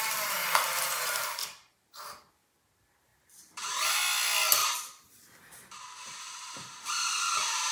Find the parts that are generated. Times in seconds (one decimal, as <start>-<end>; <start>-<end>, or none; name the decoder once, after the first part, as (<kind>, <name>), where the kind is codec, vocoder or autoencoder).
0.4-1.0 (vocoder, BigVGAN v2); 1.4-2.3; 3.1-4.0; 4.6-7.1